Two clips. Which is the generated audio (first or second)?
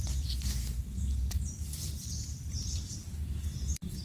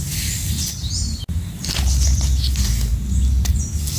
first